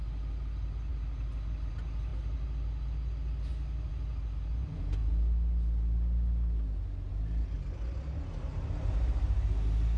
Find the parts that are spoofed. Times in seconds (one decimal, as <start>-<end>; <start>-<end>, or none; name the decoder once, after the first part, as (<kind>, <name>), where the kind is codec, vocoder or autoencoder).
none